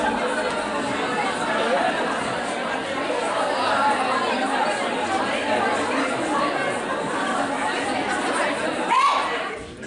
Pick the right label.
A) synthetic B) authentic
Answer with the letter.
B